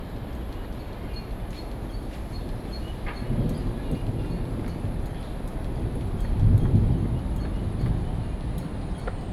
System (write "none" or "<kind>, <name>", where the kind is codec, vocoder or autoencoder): none